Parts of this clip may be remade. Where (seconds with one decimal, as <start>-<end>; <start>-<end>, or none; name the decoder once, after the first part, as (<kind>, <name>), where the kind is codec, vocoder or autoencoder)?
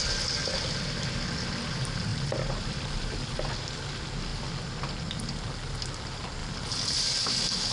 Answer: 2.1-3.7 (vocoder, BigVGAN v2); 6.4-7.2